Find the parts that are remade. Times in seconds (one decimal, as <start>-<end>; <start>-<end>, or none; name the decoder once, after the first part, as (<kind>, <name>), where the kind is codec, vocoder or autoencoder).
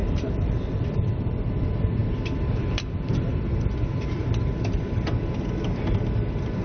0.0-1.3 (vocoder, BigVGAN v2)